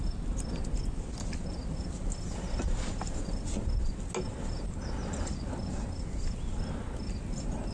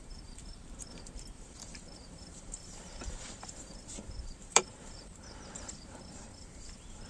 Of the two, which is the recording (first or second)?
first